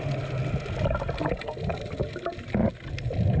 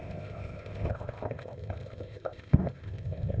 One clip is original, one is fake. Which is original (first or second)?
first